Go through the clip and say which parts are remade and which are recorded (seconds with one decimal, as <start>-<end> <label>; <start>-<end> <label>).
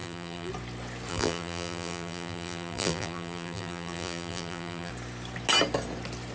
0.0-0.5 remade; 0.5-1.1 recorded; 1.1-4.9 remade; 4.9-6.3 recorded